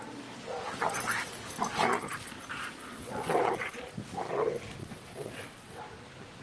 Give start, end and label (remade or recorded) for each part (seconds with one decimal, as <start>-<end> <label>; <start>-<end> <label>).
0.0-2.8 recorded; 2.8-3.7 remade; 3.7-4.8 recorded; 4.8-5.8 remade; 5.8-6.4 recorded